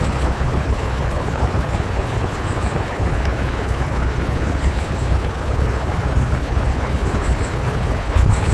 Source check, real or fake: fake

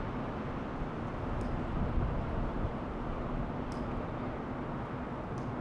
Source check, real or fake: real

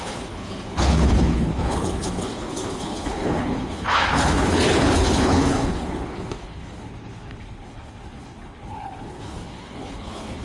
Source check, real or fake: fake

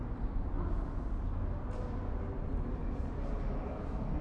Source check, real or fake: real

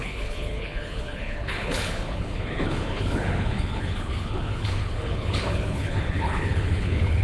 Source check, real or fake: fake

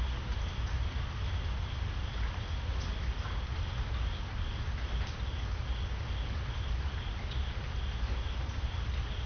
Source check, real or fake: real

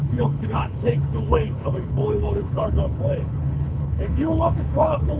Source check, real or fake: fake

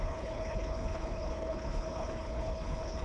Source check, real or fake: fake